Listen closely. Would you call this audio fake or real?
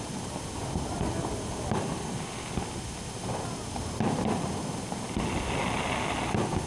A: real